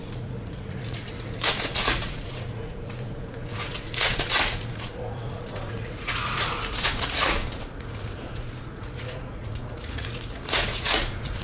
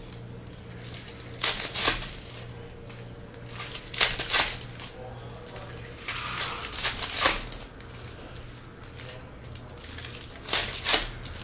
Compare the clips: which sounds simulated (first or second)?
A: first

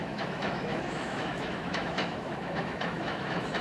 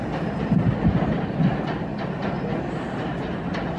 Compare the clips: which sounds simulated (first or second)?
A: first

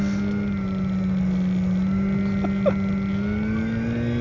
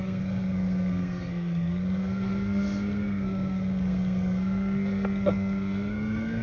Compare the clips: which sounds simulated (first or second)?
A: second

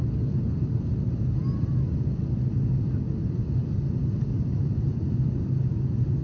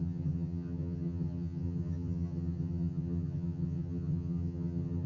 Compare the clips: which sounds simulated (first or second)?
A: second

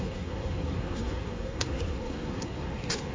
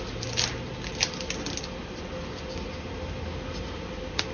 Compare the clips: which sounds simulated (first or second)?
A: first